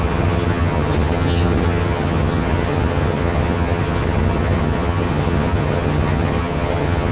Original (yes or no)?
no